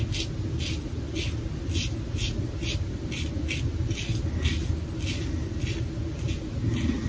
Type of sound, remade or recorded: recorded